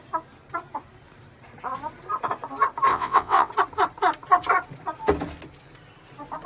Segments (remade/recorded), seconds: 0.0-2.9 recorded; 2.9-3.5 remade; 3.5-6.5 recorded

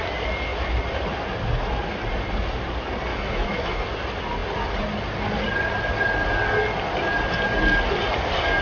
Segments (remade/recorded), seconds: 0.0-3.1 recorded; 3.1-3.8 remade; 3.8-8.6 recorded

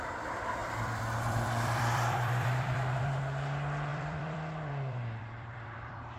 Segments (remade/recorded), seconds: 0.0-0.6 recorded; 0.6-3.2 remade; 3.2-3.9 recorded; 3.9-6.2 remade

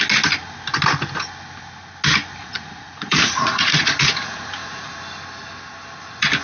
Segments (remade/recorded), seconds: 0.0-2.4 recorded; 2.4-4.9 remade; 4.9-6.4 recorded

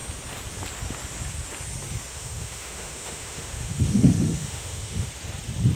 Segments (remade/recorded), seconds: 0.0-2.1 recorded; 2.1-5.1 remade; 5.1-5.7 recorded

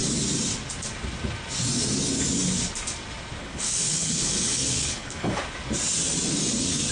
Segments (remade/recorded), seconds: 0.0-3.4 recorded; 3.4-5.4 remade; 5.4-6.9 recorded

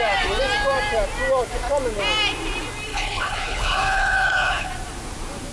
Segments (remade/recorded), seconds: 0.0-2.9 recorded; 2.9-4.7 remade; 4.7-5.5 recorded

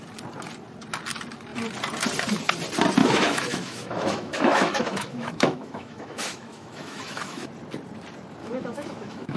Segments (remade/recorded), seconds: 0.0-3.0 recorded; 3.0-7.5 remade; 7.5-8.4 recorded; 8.4-9.4 remade